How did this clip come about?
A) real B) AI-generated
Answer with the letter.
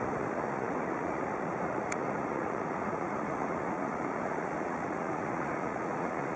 B